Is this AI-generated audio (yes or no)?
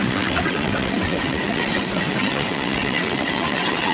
yes